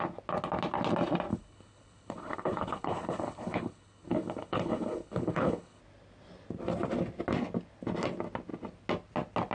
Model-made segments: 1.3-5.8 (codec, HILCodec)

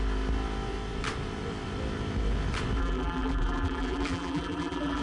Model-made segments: 2.8-5.0 (vocoder, BigVGAN v2)